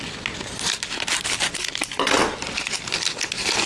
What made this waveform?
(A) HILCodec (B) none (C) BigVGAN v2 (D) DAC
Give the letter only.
B